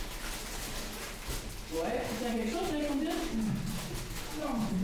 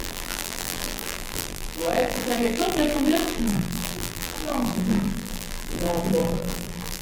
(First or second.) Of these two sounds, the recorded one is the first